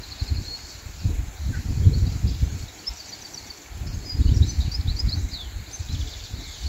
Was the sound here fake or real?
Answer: fake